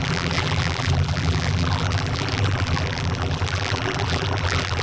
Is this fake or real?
fake